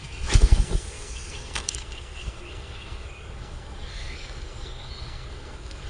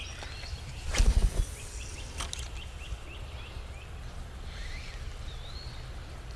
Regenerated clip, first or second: first